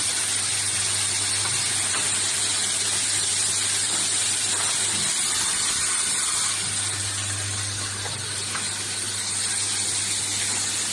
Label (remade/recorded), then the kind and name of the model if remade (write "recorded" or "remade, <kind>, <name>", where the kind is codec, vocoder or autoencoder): recorded